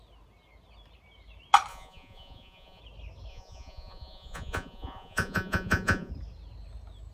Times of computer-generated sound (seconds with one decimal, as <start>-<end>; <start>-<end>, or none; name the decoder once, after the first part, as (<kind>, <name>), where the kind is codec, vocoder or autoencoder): 1.7-2.8 (vocoder, Vocos); 3.3-6.1